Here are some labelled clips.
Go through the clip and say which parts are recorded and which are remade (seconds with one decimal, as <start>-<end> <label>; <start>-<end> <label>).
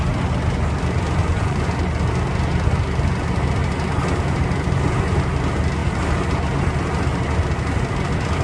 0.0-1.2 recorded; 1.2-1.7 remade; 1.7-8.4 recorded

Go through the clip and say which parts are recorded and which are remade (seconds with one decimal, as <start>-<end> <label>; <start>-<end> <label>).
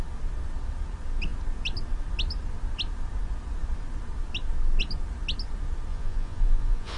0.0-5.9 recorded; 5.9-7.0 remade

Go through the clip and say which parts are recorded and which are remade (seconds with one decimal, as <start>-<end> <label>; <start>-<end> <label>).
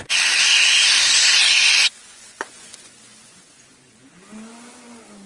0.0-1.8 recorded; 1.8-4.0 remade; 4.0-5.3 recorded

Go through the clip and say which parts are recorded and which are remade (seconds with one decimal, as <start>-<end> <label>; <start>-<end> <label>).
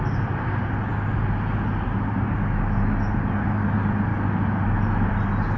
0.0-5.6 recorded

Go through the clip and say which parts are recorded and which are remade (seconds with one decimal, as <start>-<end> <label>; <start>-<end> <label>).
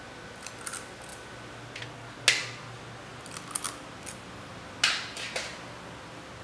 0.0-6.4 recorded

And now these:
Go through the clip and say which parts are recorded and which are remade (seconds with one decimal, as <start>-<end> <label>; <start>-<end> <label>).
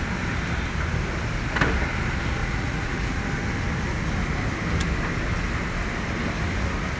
0.0-2.4 recorded; 2.4-3.2 remade; 3.2-7.0 recorded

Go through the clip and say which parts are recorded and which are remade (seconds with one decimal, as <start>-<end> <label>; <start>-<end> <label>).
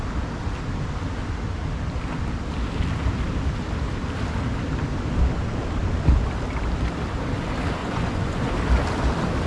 0.0-7.8 recorded; 7.8-8.5 remade; 8.5-9.5 recorded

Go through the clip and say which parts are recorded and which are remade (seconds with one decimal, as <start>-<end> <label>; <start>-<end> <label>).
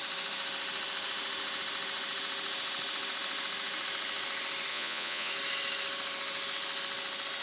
0.0-4.7 recorded; 4.7-5.3 remade; 5.3-7.4 recorded